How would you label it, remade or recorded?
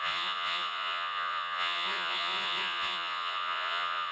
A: remade